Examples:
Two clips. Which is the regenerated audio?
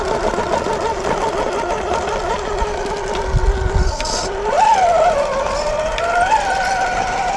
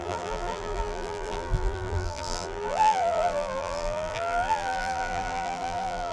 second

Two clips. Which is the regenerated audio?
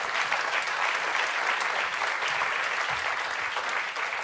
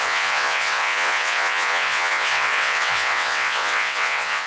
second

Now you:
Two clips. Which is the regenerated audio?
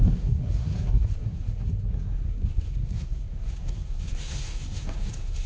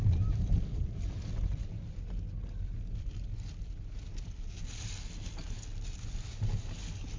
first